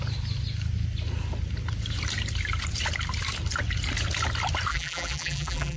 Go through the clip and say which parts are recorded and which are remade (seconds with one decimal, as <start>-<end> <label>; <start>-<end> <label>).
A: 0.0-4.7 recorded; 4.7-5.8 remade